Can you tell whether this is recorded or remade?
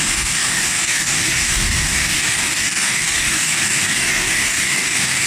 remade